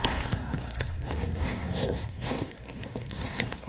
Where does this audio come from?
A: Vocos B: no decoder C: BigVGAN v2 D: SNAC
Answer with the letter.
D